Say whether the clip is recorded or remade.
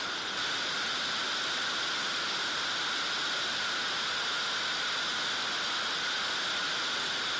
recorded